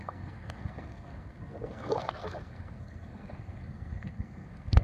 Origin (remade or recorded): remade